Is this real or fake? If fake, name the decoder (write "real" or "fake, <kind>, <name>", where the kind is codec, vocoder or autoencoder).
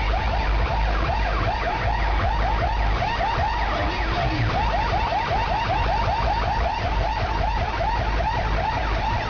real